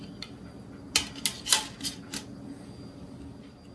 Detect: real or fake real